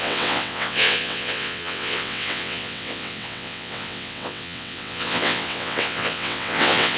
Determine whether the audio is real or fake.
fake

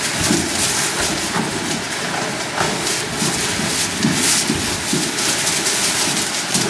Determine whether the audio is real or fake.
real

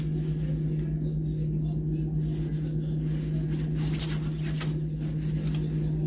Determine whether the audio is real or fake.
real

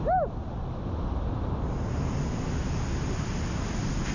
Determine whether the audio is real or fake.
real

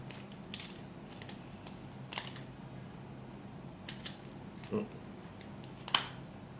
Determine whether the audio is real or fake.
real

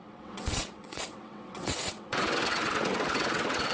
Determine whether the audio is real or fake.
fake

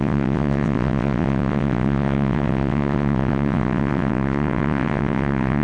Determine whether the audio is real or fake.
fake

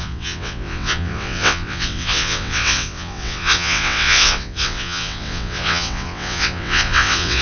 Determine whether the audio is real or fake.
fake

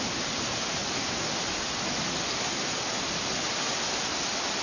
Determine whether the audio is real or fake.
real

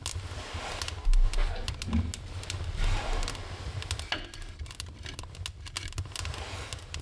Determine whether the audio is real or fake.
real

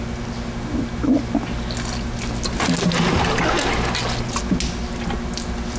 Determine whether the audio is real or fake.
real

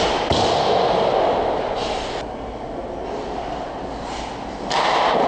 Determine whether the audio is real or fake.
real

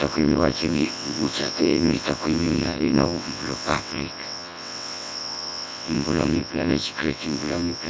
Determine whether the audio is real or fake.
fake